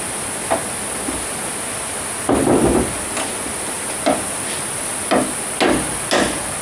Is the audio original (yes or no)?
yes